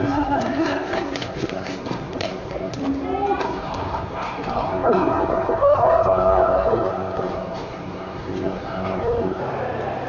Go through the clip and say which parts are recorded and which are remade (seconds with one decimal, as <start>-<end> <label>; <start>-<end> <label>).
0.0-2.8 remade; 2.8-3.4 recorded; 3.4-9.4 remade; 9.4-10.1 recorded